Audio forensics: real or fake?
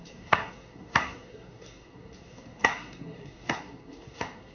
fake